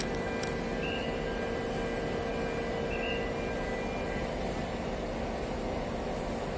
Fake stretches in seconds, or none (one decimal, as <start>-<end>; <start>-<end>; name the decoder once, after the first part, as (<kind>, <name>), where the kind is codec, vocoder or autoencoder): none